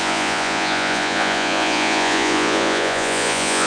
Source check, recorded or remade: remade